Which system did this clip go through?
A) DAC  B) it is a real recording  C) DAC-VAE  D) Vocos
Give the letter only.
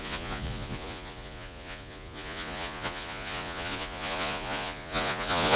D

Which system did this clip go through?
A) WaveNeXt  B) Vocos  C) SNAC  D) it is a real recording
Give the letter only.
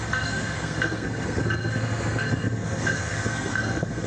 C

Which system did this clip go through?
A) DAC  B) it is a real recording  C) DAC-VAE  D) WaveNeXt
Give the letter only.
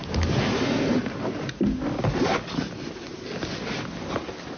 B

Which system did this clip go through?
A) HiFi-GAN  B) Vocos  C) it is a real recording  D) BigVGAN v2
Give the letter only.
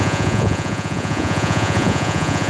B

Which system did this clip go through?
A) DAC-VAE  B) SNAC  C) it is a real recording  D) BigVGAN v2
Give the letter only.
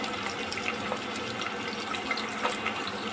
C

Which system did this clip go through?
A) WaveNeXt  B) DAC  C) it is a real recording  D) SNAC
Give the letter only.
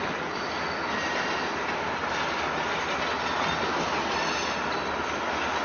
C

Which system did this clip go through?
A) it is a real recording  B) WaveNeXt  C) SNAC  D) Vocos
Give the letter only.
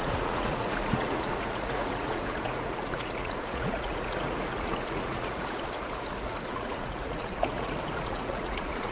D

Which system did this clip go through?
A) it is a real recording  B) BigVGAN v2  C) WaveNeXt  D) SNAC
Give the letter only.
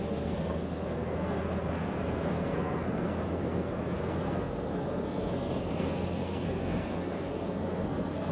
D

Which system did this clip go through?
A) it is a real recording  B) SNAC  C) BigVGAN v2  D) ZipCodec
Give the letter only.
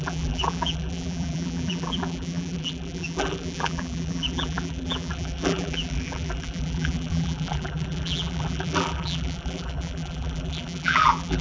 C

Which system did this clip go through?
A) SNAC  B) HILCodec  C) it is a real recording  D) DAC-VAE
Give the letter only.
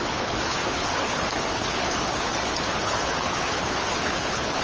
B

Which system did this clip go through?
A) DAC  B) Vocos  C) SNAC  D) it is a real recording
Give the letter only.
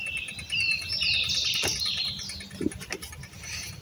D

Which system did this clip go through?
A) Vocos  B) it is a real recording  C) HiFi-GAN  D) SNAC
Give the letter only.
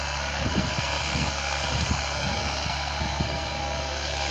D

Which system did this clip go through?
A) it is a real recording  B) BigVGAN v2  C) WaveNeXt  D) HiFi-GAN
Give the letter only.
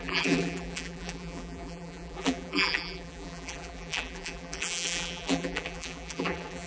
B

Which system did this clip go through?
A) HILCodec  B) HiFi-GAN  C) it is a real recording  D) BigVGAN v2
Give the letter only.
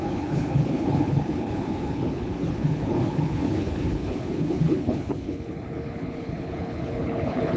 A